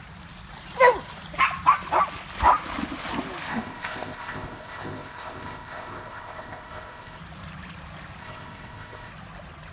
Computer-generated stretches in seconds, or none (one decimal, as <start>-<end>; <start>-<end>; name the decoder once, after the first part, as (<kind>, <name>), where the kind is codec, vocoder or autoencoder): 3.5-7.2 (codec, ZipCodec); 8.2-9.1

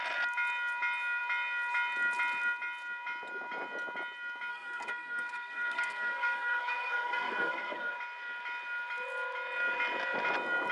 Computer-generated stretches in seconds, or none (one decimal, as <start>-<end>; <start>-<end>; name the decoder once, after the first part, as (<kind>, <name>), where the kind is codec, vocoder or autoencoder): 4.5-7.9 (codec, SNAC)